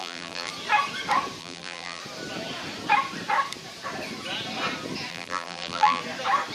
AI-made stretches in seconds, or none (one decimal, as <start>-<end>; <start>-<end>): 0.0-0.5; 1.4-2.0; 5.1-6.0